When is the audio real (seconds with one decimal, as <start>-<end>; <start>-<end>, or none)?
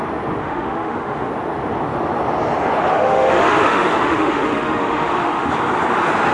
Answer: 0.0-0.4; 1.3-2.9; 5.5-6.3